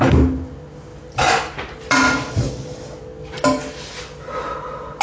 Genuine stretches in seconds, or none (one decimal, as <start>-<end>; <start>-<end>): 0.0-5.0